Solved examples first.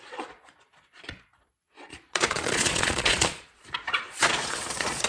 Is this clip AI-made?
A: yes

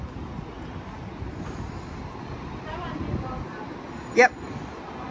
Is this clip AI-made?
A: no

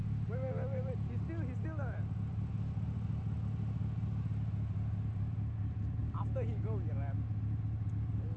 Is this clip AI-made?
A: no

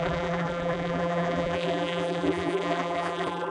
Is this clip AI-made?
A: yes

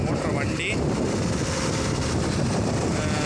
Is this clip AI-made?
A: no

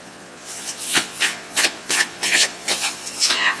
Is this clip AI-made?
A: yes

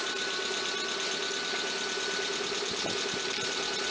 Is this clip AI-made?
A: no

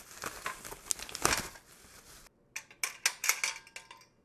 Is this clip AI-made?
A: no